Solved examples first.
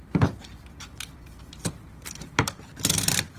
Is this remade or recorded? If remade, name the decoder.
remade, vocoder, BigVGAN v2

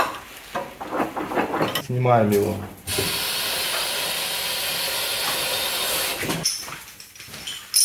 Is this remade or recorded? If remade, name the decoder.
recorded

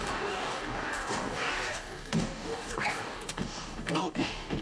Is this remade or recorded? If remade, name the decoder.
remade, codec, DAC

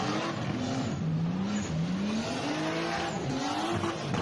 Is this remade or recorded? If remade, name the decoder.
recorded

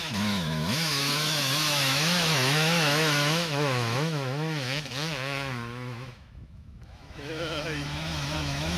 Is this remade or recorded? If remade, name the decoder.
remade, autoencoder, DAC-VAE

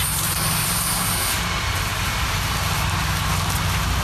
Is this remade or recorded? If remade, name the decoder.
recorded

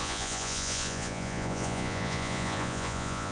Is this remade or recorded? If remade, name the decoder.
remade, vocoder, Vocos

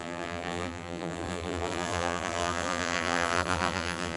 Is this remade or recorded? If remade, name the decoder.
remade, vocoder, BigVGAN v2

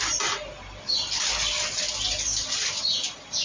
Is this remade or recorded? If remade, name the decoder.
recorded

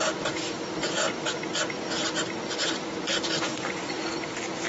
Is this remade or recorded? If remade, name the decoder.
recorded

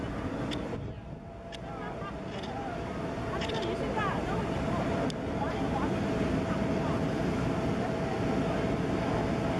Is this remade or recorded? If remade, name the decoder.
recorded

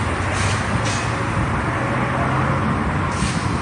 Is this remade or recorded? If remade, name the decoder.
recorded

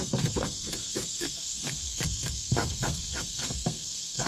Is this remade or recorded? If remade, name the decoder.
remade, codec, SNAC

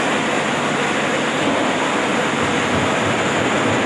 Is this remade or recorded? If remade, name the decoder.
recorded